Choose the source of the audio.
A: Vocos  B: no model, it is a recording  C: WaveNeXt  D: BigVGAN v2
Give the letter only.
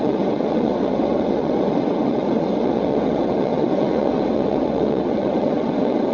C